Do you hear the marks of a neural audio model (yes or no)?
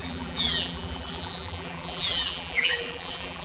yes